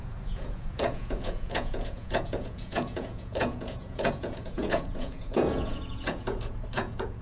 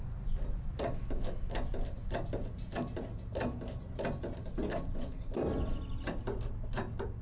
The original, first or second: second